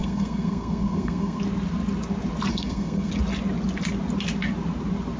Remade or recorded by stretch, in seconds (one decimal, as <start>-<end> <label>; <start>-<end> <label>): 0.0-1.4 remade; 1.4-2.5 recorded; 2.5-3.1 remade; 3.1-5.2 recorded